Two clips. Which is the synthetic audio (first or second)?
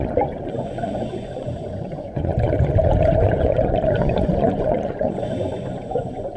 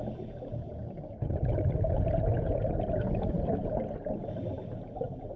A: first